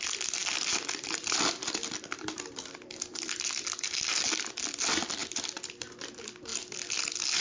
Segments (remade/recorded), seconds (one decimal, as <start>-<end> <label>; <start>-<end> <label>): 0.0-0.4 recorded; 0.4-4.8 remade; 4.8-7.4 recorded